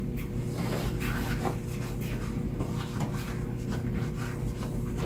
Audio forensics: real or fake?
real